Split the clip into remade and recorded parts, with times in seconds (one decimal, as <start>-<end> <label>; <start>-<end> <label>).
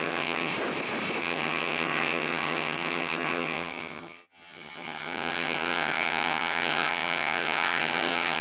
0.0-0.5 remade; 0.5-1.2 recorded; 1.2-8.4 remade